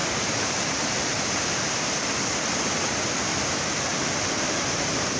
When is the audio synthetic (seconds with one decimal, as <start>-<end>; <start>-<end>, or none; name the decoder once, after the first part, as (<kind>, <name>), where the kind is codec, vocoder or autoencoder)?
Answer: 0.0-2.1 (vocoder, BigVGAN v2); 3.9-5.2